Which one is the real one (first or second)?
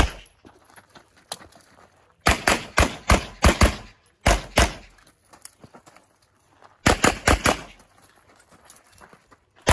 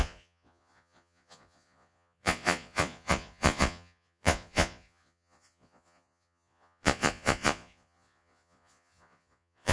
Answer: first